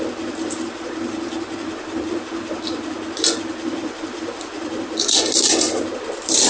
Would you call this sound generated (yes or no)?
yes